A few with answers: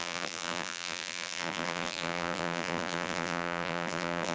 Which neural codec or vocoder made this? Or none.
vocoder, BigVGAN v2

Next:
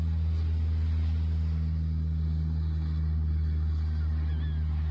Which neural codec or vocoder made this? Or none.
none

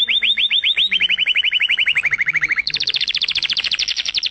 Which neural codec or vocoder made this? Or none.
vocoder, BigVGAN v2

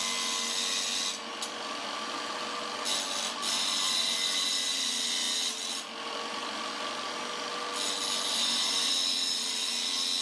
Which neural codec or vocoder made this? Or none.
none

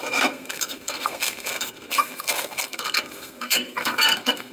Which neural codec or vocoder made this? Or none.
codec, SNAC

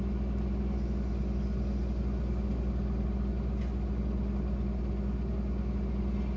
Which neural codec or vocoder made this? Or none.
none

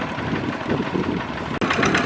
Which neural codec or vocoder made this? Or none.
none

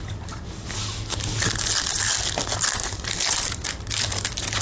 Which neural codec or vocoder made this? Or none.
none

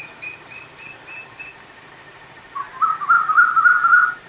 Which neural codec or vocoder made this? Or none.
none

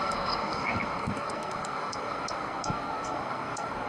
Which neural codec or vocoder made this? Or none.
codec, SNAC